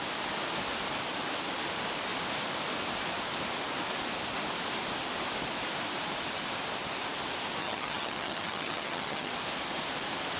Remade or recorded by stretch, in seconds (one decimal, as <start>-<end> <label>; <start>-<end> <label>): 0.0-7.6 recorded; 7.6-9.3 remade; 9.3-10.4 recorded